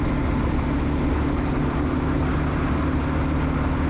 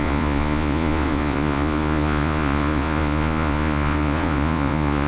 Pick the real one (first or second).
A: first